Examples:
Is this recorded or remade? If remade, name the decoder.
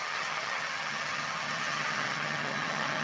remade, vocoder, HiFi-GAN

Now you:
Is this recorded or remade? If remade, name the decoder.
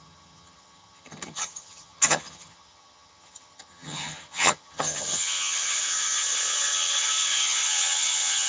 remade, vocoder, HiFi-GAN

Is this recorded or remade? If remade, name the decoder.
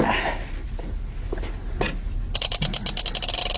recorded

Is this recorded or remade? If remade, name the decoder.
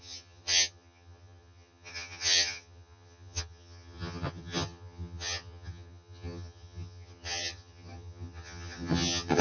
remade, vocoder, HiFi-GAN